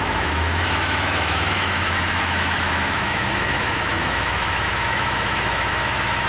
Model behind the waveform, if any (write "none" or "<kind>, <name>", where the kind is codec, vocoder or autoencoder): autoencoder, DAC-VAE